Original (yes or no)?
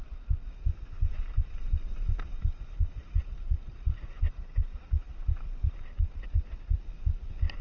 yes